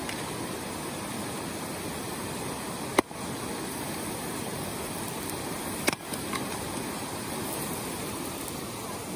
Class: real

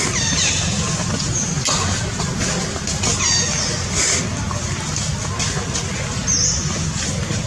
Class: real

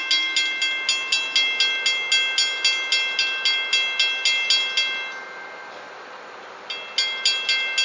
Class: real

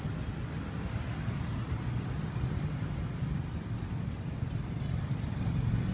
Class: real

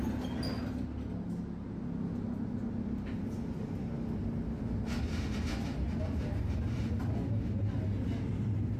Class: real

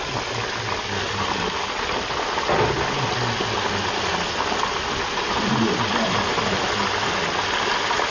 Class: real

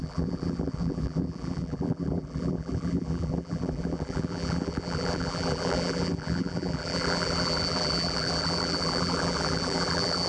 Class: fake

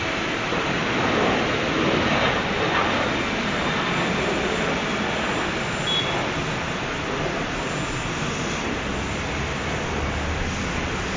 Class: real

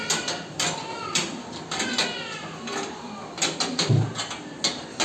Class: real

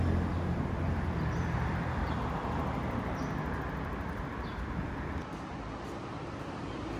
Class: real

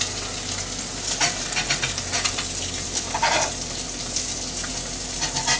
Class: real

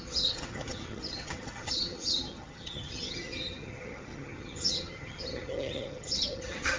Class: fake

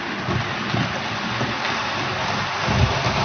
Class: real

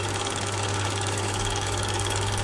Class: fake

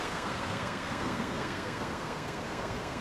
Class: fake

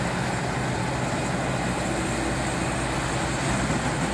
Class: real